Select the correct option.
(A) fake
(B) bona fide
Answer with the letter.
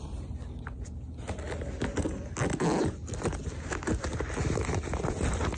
B